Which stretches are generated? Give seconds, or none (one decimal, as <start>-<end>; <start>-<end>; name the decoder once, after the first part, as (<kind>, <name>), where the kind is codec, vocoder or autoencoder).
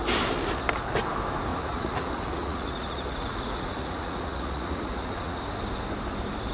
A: 1.5-5.4 (vocoder, Vocos)